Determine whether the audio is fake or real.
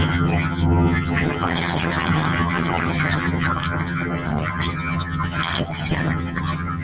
fake